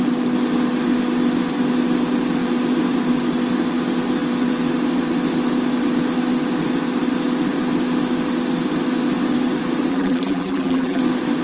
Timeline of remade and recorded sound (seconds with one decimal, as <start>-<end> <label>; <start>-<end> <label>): 0.0-9.9 recorded; 9.9-11.0 remade; 11.0-11.4 recorded